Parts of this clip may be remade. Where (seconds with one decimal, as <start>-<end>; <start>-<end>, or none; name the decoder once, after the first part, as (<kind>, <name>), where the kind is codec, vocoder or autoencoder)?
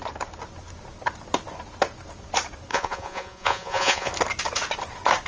2.7-4.1 (vocoder, Vocos)